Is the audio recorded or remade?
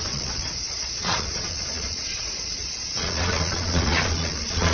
remade